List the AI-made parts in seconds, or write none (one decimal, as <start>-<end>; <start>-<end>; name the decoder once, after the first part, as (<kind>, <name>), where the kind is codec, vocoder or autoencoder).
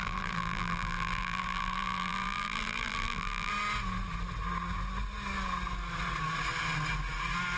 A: 0.0-3.5 (vocoder, BigVGAN v2)